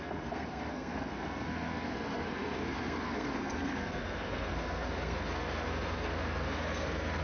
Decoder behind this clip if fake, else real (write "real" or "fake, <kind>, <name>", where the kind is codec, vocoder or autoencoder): fake, codec, SNAC